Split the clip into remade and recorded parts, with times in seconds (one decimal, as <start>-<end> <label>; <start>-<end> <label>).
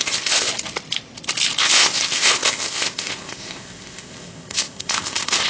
0.0-0.5 remade; 0.5-1.6 recorded; 1.6-5.5 remade